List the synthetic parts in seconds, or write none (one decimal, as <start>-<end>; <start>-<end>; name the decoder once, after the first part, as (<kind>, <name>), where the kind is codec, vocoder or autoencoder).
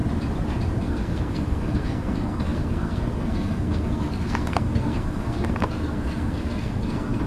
0.8-7.3 (codec, SNAC)